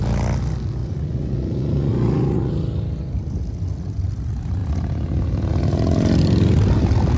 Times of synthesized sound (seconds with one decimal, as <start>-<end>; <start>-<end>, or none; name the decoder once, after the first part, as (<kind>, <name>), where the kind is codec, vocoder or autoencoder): 0.8-2.5 (vocoder, Vocos)